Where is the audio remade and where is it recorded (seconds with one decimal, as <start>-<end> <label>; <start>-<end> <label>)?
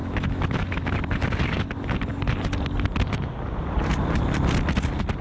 0.0-0.9 remade; 0.9-5.2 recorded